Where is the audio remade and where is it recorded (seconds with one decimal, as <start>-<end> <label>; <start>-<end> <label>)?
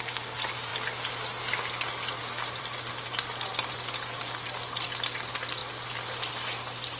0.0-7.0 recorded